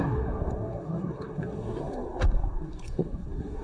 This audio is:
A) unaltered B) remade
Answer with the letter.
B